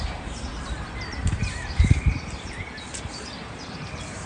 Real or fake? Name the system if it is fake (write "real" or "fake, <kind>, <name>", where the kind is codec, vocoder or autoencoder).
fake, vocoder, BigVGAN v2